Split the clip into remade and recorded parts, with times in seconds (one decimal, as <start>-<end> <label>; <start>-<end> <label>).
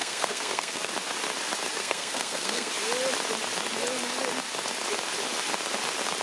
0.0-0.9 remade; 0.9-1.8 recorded; 1.8-2.7 remade; 2.7-6.2 recorded